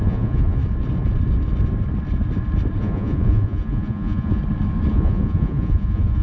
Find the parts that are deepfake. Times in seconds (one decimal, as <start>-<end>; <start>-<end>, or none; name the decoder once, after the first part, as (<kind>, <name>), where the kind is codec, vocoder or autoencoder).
0.0-0.6 (vocoder, Vocos); 2.8-4.4; 4.9-6.2